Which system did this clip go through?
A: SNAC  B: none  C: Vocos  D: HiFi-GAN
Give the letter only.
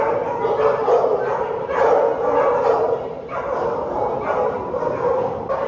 B